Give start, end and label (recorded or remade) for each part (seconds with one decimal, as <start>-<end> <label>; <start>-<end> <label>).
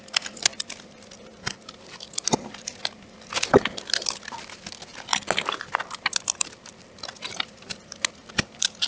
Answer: 0.0-8.9 recorded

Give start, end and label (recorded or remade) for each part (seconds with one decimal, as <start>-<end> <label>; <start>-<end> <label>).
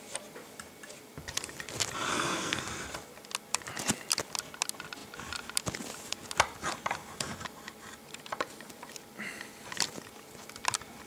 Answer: 0.0-2.1 recorded; 2.1-2.6 remade; 2.6-11.1 recorded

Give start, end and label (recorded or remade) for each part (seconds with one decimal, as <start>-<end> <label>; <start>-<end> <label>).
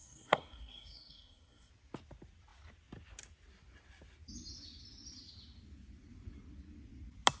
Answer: 0.0-1.7 remade; 1.7-7.4 recorded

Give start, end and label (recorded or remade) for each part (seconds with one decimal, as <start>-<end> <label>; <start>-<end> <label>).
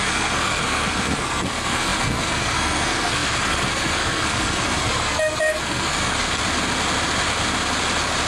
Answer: 0.0-6.4 remade; 6.4-8.3 recorded